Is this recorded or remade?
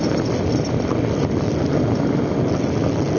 recorded